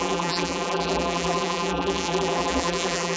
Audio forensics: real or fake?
fake